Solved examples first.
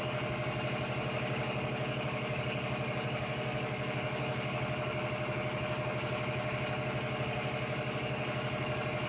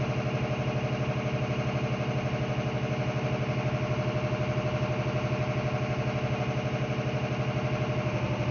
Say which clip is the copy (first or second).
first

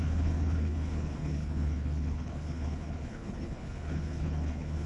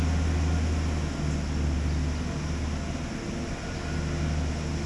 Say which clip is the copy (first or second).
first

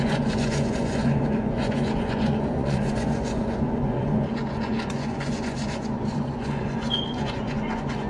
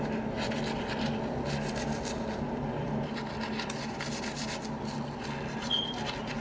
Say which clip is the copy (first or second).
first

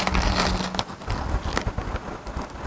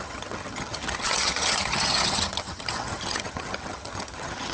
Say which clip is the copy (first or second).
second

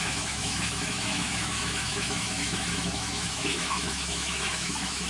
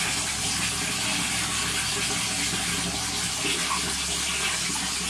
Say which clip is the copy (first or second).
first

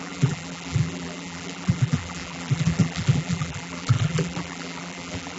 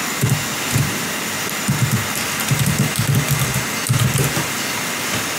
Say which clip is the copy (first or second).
first